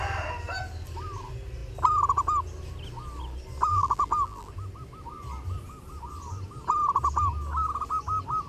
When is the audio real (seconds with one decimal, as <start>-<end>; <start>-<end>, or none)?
0.0-3.7; 4.5-8.5